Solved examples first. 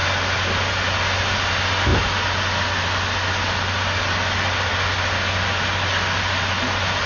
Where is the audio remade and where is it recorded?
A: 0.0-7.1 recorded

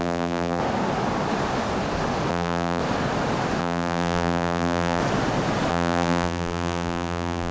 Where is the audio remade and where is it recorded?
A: 0.0-0.6 remade; 0.6-2.3 recorded; 2.3-2.8 remade; 2.8-3.6 recorded; 3.6-5.0 remade; 5.0-5.7 recorded; 5.7-7.5 remade

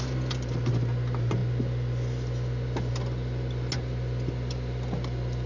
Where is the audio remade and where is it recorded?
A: 0.0-5.5 recorded

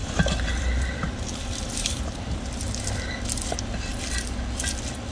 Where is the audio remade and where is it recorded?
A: 0.0-3.0 remade; 3.0-5.1 recorded

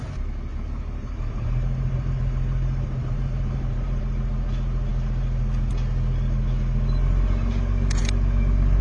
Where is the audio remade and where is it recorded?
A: 0.0-0.5 recorded; 0.5-4.0 remade; 4.0-8.8 recorded

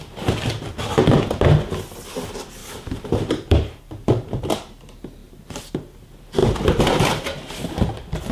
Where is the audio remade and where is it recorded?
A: 0.0-2.6 recorded; 2.6-4.4 remade; 4.4-8.3 recorded

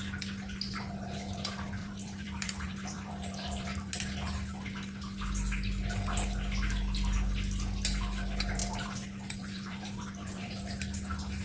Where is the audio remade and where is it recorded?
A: 0.0-1.8 recorded; 1.8-3.9 remade; 3.9-8.6 recorded; 8.6-10.5 remade; 10.5-11.4 recorded

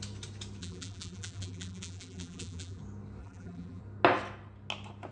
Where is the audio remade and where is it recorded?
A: 0.0-0.6 recorded; 0.6-2.8 remade; 2.8-3.2 recorded; 3.2-3.8 remade; 3.8-5.1 recorded